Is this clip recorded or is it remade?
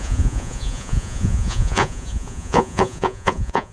remade